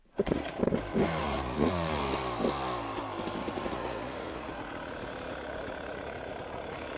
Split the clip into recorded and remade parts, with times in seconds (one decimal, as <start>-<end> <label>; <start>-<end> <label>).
0.0-0.6 remade; 0.6-1.2 recorded; 1.2-2.0 remade; 2.0-3.4 recorded; 3.4-7.0 remade